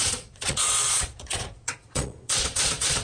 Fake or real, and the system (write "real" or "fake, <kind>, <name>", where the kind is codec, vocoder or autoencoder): fake, vocoder, Vocos